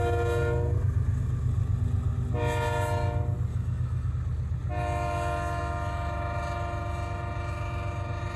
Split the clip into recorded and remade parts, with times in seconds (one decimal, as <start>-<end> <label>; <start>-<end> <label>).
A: 0.0-3.5 recorded; 3.5-4.1 remade; 4.1-8.4 recorded